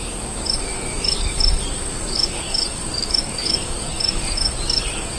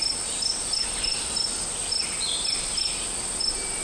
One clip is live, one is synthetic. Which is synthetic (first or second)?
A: first